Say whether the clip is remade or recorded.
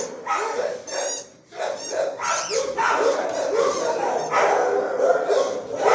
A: recorded